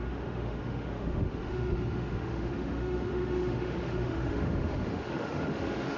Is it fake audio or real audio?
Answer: fake